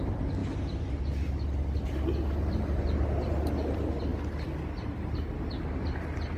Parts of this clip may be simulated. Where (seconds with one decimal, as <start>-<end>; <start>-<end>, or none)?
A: none